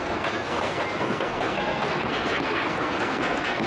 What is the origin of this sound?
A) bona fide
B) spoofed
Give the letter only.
B